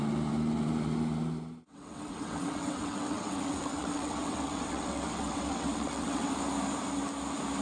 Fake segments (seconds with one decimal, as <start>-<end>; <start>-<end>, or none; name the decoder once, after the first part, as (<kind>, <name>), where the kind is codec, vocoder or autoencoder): 1.7-6.3 (vocoder, WaveNeXt)